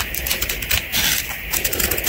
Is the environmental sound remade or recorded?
recorded